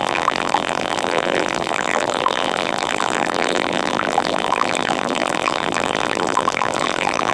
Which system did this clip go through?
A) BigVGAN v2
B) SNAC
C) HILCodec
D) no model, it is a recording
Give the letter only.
A